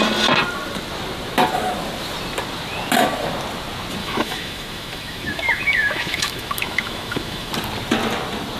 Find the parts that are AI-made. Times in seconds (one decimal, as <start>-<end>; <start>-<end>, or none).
4.0-7.5